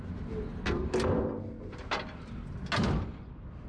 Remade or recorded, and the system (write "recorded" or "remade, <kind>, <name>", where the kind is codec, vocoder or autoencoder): recorded